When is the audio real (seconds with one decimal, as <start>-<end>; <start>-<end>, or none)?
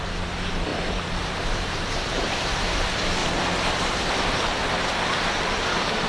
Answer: 0.7-1.3; 3.2-3.8; 4.6-5.3